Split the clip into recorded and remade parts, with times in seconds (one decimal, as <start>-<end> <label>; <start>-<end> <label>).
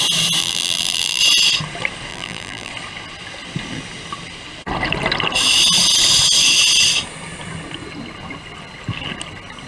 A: 0.0-0.4 recorded; 0.4-1.2 remade; 1.2-2.1 recorded; 2.1-2.7 remade; 2.7-9.7 recorded